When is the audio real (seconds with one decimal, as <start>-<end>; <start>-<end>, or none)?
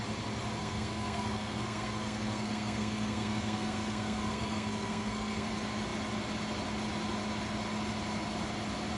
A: 0.0-0.6; 5.5-9.0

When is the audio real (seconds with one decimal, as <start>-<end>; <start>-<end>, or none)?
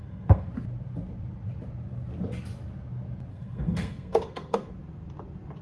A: 0.5-3.3; 4.7-5.6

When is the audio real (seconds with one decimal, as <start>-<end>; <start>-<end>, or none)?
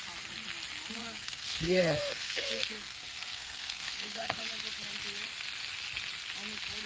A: 0.0-1.0; 4.4-6.9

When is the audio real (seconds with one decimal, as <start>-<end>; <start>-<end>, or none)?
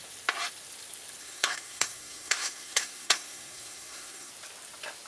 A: 0.0-1.2; 4.3-5.1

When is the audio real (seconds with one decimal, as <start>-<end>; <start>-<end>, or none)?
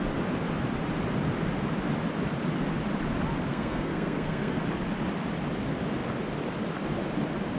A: 0.0-3.5; 4.6-7.6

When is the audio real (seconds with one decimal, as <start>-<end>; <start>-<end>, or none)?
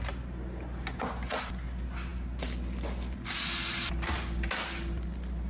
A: 0.0-5.5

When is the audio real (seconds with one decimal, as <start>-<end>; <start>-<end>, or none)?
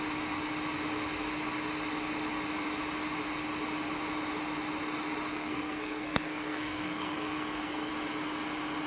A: 0.0-5.3; 7.9-8.9